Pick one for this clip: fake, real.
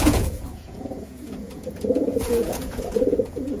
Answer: fake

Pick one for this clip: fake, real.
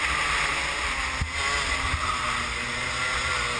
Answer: real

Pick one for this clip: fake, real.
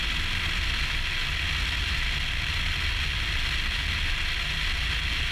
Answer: real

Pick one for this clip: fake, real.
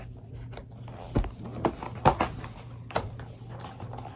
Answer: real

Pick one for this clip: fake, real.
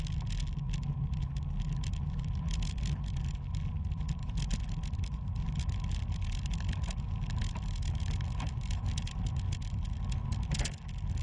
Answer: real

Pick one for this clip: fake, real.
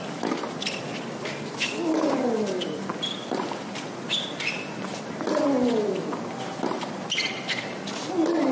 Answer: real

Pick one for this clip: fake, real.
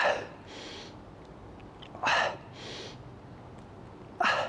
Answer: real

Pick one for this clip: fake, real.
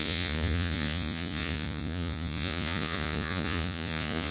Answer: fake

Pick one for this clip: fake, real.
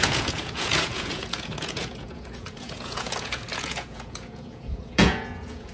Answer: fake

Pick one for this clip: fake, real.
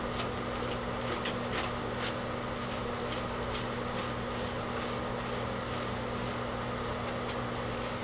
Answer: real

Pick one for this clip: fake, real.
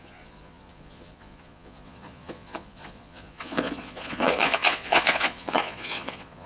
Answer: fake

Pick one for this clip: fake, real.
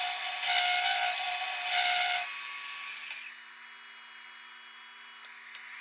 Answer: real